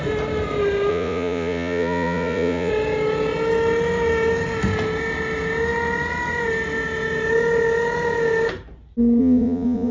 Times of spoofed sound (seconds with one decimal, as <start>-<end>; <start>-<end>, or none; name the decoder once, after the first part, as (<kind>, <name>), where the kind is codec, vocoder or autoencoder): 0.9-2.7 (vocoder, Vocos); 9.2-9.9